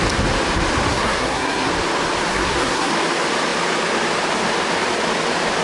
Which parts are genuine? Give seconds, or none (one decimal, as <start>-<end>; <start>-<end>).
0.0-0.9; 1.7-2.3; 2.9-5.6